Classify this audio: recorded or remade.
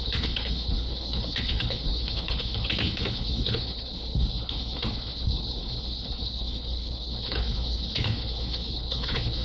remade